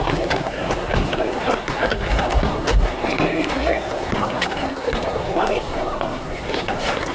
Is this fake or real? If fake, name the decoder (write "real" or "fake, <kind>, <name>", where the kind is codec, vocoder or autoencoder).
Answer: fake, codec, SNAC